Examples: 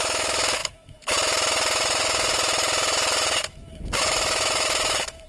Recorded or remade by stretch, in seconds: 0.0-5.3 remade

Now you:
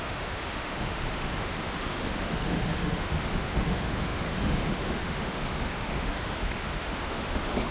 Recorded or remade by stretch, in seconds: 0.0-7.7 remade

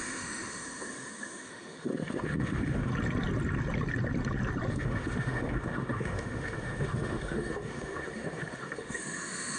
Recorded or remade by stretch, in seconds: 0.0-2.9 remade; 2.9-4.7 recorded; 4.7-9.6 remade

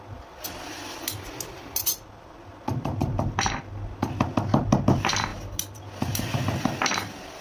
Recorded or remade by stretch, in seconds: 0.0-7.4 recorded

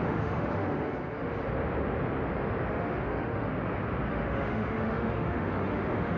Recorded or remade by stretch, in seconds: 0.0-1.4 remade; 1.4-2.7 recorded; 2.7-3.5 remade; 3.5-4.1 recorded; 4.1-6.2 remade

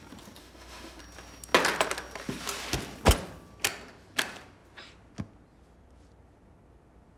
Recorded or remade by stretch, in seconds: 0.0-0.4 recorded; 0.4-1.0 remade; 1.0-7.2 recorded

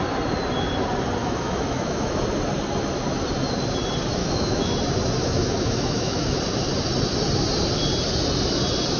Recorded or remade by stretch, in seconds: 0.0-1.2 recorded; 1.2-2.1 remade; 2.1-4.2 recorded; 4.2-4.7 remade; 4.7-5.2 recorded; 5.2-6.4 remade; 6.4-9.0 recorded